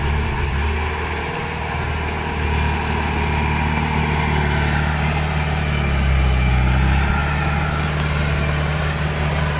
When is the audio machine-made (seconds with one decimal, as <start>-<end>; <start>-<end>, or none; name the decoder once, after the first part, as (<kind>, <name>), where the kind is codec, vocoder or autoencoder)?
none